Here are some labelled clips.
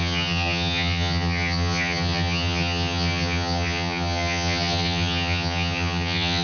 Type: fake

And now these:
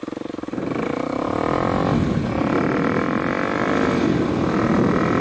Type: real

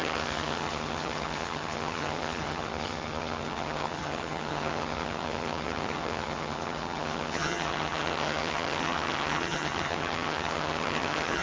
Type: fake